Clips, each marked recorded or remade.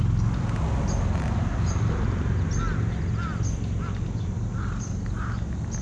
recorded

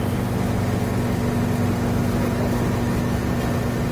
recorded